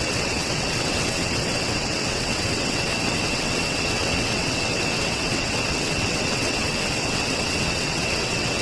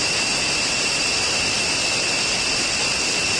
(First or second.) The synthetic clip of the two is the first